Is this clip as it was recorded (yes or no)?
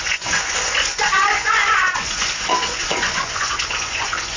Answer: no